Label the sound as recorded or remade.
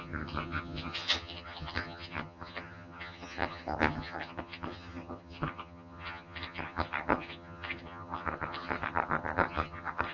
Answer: remade